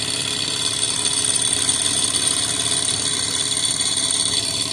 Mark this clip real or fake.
real